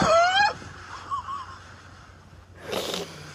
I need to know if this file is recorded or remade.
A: recorded